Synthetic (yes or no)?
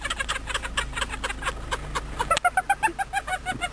no